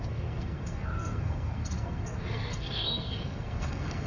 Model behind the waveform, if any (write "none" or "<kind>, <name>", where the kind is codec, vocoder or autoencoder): codec, SNAC